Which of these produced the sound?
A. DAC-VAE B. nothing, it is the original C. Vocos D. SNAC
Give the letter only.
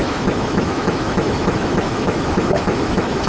A